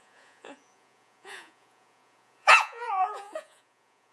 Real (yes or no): no